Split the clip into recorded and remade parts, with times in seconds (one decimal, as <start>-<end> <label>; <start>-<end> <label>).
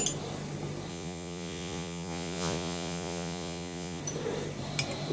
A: 0.0-0.9 recorded; 0.9-4.0 remade; 4.0-5.1 recorded